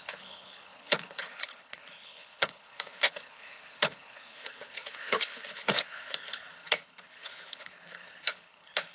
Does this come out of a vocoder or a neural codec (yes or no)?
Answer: yes